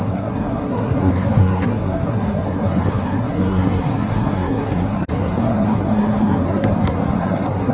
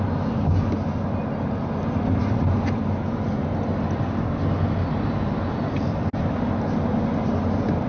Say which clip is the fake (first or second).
first